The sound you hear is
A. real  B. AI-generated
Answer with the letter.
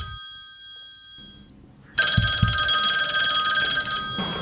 A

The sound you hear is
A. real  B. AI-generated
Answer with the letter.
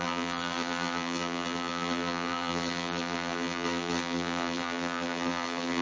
B